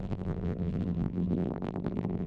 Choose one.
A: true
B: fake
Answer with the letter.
B